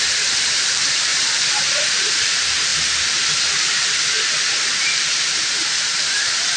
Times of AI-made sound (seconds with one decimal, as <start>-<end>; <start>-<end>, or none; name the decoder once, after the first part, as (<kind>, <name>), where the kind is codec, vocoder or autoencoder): 0.0-1.1 (vocoder, BigVGAN v2); 1.7-2.7; 5.0-6.6